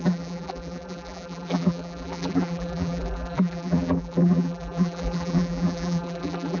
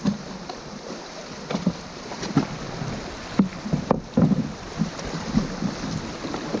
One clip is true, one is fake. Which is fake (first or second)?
first